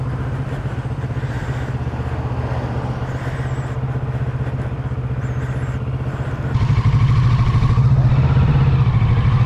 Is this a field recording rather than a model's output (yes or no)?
yes